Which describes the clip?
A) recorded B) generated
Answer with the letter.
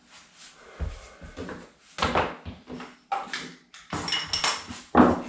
A